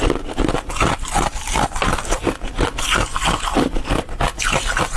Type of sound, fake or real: real